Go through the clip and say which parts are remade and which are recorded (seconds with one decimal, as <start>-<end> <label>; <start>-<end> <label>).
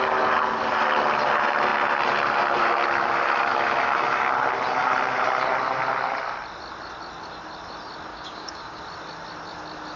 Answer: 0.0-8.1 recorded; 8.1-8.8 remade; 8.8-10.0 recorded